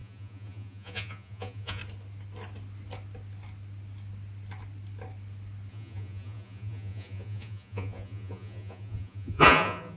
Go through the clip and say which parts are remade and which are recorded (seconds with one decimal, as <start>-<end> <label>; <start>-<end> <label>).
0.0-1.8 remade; 1.8-5.7 recorded; 5.7-10.0 remade